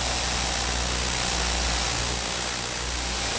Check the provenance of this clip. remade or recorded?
recorded